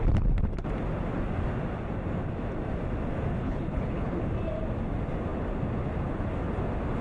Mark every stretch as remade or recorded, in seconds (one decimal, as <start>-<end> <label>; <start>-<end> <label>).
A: 0.0-3.4 recorded; 3.4-4.2 remade; 4.2-7.0 recorded